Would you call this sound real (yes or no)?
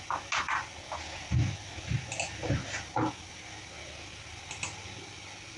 yes